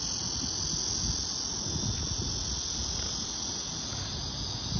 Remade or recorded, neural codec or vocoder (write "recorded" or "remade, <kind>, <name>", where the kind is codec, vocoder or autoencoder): recorded